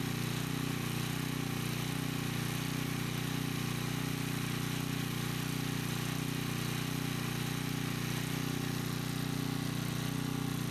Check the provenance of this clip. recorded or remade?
recorded